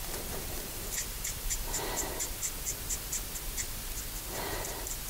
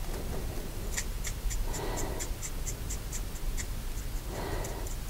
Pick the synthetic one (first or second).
first